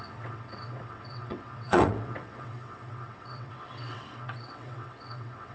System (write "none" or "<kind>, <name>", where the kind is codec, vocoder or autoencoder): vocoder, WaveNeXt